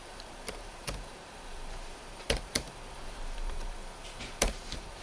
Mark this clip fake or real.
fake